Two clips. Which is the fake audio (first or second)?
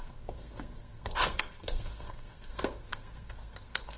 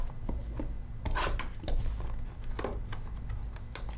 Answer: first